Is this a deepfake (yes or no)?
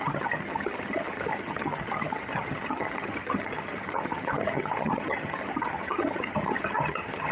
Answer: yes